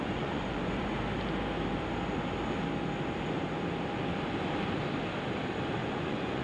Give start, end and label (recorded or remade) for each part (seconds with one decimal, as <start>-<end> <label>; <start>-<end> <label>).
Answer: 0.0-0.9 remade; 0.9-5.8 recorded; 5.8-6.4 remade